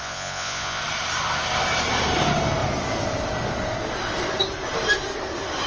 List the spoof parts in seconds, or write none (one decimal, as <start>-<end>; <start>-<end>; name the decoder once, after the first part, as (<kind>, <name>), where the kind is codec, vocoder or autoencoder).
0.0-0.8 (vocoder, Vocos)